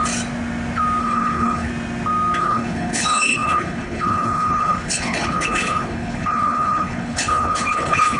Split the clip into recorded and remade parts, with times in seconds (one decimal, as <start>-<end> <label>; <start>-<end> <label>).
0.0-1.0 recorded; 1.0-1.7 remade; 1.7-2.4 recorded; 2.4-8.2 remade